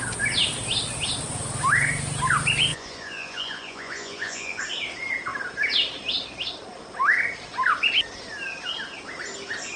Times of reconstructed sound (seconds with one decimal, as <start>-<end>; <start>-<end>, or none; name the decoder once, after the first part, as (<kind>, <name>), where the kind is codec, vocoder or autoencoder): 2.7-4.6 (vocoder, Vocos)